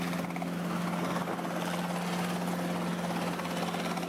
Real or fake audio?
real